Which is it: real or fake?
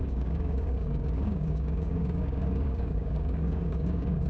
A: fake